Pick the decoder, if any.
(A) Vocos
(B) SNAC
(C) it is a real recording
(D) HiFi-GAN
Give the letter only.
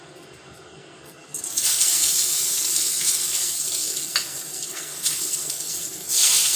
B